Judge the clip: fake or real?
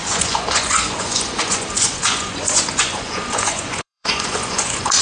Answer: fake